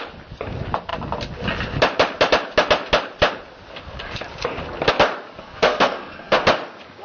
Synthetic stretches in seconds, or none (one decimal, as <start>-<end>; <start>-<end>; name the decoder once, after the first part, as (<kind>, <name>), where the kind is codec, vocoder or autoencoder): 5.4-6.4 (codec, SNAC)